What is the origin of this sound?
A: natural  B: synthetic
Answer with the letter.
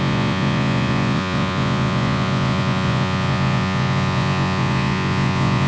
B